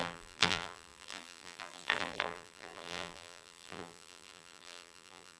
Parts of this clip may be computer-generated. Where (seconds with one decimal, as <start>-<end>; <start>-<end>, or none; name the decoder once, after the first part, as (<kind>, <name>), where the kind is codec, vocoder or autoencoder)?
0.0-5.4 (vocoder, BigVGAN v2)